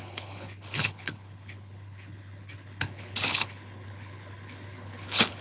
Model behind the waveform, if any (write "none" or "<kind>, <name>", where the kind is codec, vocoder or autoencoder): codec, HILCodec